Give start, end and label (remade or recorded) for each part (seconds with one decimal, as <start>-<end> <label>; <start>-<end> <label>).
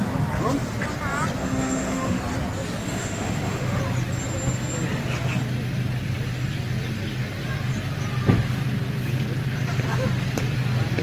0.0-1.4 recorded; 1.4-2.2 remade; 2.2-2.8 recorded; 2.8-3.8 remade; 3.8-11.0 recorded